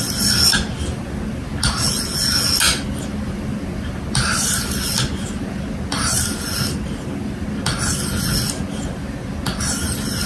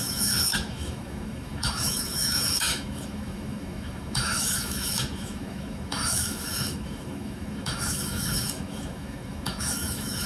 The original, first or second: first